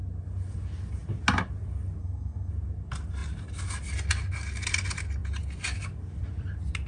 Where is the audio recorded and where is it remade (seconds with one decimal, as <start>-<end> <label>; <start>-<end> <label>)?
0.0-2.0 recorded; 2.0-2.5 remade; 2.5-6.9 recorded